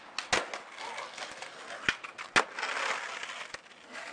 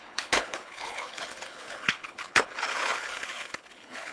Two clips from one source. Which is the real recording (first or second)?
first